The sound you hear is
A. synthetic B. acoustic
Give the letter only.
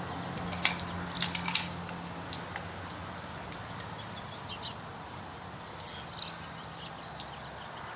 B